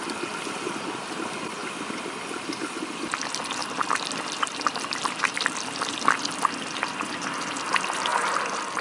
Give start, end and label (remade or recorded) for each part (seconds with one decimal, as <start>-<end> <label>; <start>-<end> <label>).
0.0-1.6 recorded; 1.6-2.2 remade; 2.2-3.6 recorded; 3.6-5.9 remade; 5.9-8.1 recorded; 8.1-8.8 remade